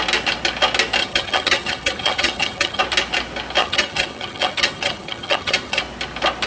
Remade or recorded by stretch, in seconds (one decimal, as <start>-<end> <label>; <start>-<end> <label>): 0.0-1.0 recorded; 1.0-2.8 remade; 2.8-3.6 recorded; 3.6-5.8 remade; 5.8-6.5 recorded